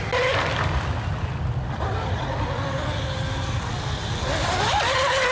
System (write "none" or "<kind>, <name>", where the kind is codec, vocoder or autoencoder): none